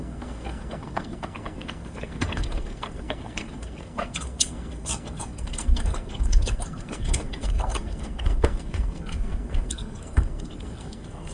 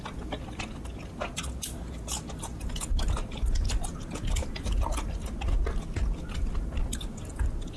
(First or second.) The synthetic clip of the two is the first